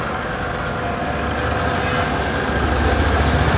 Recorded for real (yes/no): yes